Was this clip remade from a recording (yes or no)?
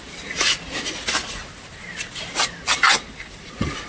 no